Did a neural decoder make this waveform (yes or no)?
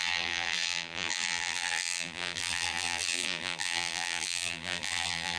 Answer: yes